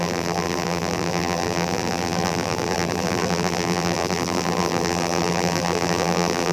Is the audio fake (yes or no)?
yes